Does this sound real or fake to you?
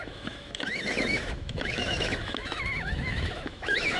fake